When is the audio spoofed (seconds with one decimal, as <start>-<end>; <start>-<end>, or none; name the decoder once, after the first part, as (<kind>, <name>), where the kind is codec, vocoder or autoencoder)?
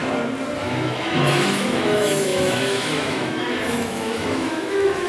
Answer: 0.6-5.1 (autoencoder, DAC-VAE)